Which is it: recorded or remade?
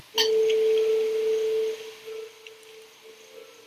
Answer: recorded